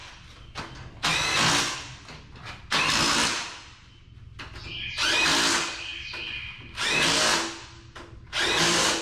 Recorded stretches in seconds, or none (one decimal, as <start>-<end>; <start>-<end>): 0.0-9.0